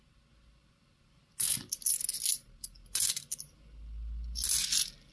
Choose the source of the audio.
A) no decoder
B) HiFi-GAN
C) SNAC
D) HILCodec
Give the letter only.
A